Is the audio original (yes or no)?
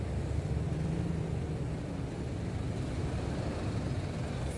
yes